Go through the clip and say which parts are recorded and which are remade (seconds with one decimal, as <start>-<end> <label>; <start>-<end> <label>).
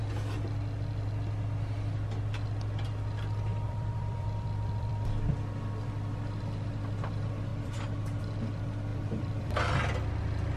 0.0-3.5 recorded; 3.5-5.1 remade; 5.1-7.5 recorded; 7.5-8.2 remade; 8.2-8.9 recorded; 8.9-9.5 remade; 9.5-10.6 recorded